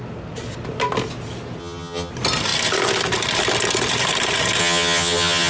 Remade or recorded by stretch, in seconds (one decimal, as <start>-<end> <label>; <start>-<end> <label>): 0.0-1.6 recorded; 1.6-2.1 remade; 2.1-4.6 recorded; 4.6-5.5 remade